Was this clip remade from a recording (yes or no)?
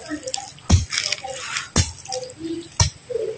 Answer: no